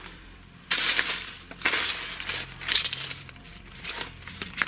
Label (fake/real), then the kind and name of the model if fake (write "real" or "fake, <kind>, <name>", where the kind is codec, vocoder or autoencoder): fake, vocoder, BigVGAN v2